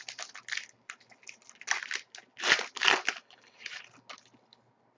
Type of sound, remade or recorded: recorded